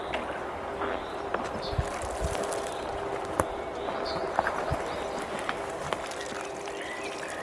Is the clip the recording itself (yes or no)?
yes